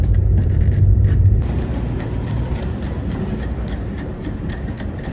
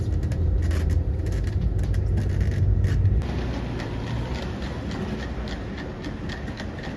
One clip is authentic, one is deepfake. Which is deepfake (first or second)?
first